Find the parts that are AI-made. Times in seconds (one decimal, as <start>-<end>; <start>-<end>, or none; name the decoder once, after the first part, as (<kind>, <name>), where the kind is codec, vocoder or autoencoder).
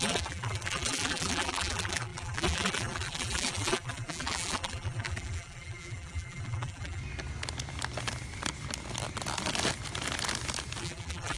0.0-7.0 (vocoder, BigVGAN v2); 10.8-11.4